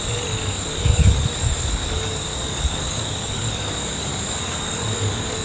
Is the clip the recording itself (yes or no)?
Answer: no